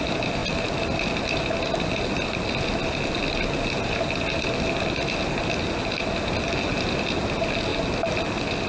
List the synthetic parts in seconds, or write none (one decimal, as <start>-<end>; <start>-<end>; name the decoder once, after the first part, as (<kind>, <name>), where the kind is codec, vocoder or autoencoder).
none